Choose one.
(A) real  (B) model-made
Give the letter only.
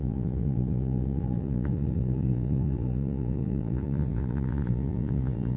B